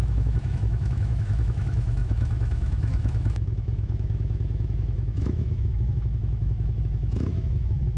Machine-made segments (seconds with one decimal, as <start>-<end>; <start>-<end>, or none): 0.0-8.0